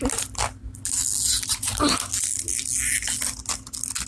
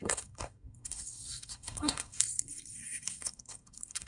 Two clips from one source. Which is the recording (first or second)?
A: first